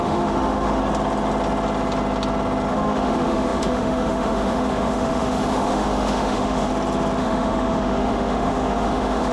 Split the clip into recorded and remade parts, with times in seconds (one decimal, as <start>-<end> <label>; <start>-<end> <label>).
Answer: 0.0-0.8 remade; 0.8-2.7 recorded; 2.7-6.7 remade; 6.7-7.2 recorded; 7.2-9.3 remade